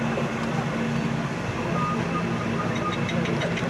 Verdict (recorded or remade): recorded